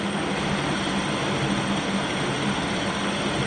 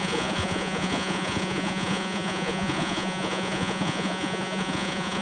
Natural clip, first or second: first